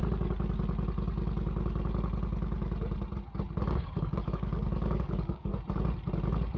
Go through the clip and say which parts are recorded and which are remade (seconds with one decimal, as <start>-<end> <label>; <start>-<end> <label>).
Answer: 0.0-3.7 recorded; 3.7-5.5 remade; 5.5-6.6 recorded